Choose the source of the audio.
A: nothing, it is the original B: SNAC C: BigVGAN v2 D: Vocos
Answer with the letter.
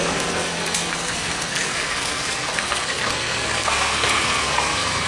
B